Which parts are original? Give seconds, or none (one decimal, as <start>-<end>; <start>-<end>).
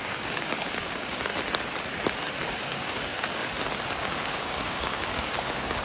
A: 1.3-2.5; 3.4-4.0